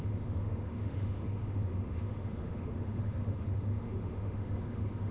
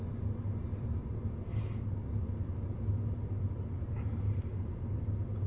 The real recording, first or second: second